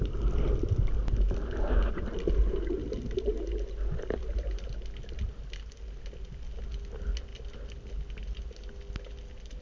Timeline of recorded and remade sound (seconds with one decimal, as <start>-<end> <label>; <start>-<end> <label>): 0.0-9.6 recorded